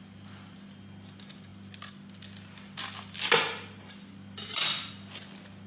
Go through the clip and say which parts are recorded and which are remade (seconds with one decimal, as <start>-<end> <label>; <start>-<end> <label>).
0.0-5.7 recorded